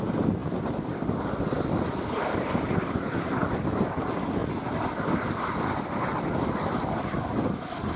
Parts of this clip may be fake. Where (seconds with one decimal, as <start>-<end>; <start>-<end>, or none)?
none